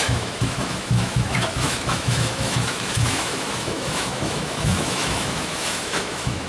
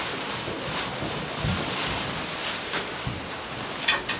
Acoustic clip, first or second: second